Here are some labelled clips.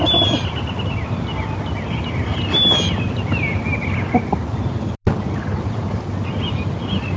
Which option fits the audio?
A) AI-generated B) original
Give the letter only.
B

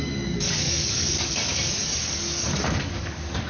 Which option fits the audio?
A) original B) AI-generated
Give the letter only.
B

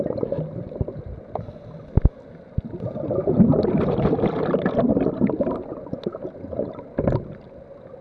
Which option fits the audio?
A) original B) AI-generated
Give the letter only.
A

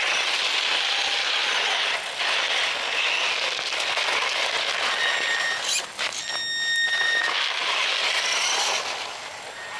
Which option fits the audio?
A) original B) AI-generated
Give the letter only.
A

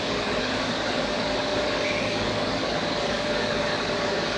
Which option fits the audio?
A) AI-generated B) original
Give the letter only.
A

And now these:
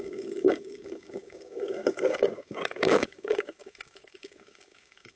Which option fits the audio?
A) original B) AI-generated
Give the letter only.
B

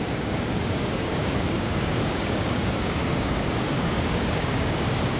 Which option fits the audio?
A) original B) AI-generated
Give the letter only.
B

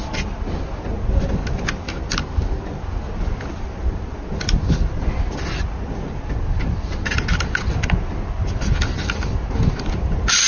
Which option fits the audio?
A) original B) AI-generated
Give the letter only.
A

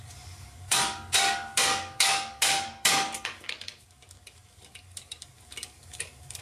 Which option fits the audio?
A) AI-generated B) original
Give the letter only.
A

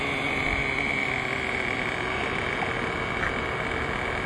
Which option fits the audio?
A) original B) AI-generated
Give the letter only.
A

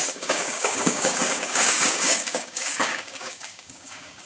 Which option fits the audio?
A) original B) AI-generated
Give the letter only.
B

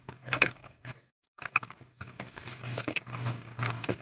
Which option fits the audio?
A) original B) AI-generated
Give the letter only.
B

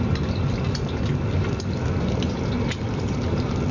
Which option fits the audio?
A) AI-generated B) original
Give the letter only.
B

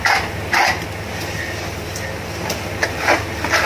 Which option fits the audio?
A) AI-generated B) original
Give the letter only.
B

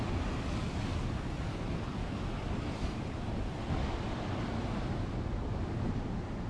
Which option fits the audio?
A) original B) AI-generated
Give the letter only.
A